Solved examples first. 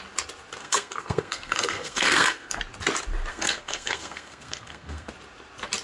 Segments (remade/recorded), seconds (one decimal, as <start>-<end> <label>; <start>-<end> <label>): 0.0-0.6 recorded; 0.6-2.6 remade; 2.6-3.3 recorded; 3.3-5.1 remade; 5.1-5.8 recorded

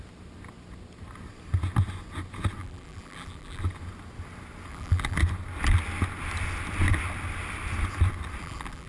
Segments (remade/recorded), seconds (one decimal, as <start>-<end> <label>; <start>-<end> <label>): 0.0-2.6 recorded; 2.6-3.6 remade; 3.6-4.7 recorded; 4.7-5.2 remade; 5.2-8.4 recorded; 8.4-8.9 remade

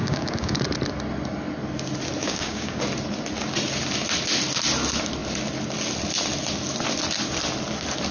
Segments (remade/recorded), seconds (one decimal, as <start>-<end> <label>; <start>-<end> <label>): 0.0-0.6 remade; 0.6-2.2 recorded; 2.2-2.8 remade; 2.8-8.1 recorded

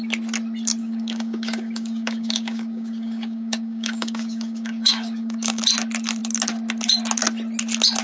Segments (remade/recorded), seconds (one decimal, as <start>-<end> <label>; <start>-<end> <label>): 0.0-0.8 recorded; 0.8-5.6 remade; 5.6-8.0 recorded